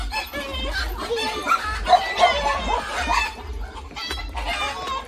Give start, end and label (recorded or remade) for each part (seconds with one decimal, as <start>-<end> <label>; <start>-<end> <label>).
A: 0.0-5.1 recorded